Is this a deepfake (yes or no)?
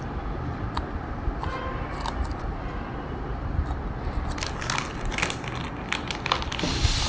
no